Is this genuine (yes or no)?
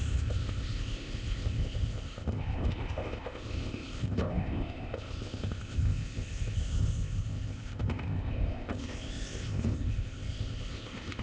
no